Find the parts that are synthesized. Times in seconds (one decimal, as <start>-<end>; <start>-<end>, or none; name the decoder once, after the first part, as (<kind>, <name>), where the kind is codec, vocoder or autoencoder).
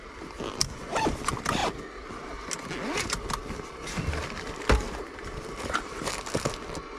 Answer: none